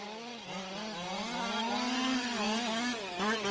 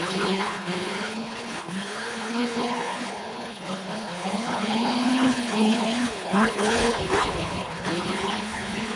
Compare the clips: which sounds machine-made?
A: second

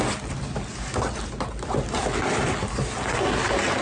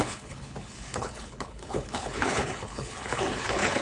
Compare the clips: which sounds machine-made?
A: second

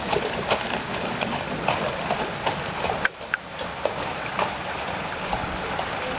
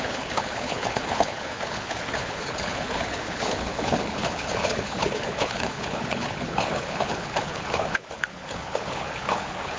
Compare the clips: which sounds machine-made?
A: second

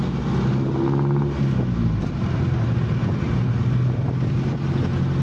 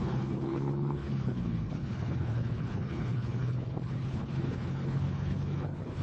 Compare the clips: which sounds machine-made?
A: second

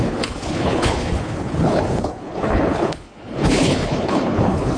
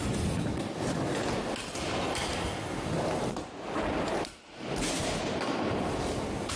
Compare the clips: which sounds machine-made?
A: first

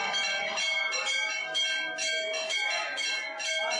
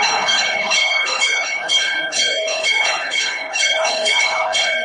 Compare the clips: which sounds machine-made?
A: second